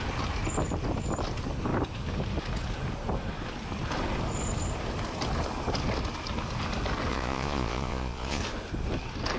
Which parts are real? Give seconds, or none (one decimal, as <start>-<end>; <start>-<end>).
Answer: 0.0-7.1; 8.4-9.4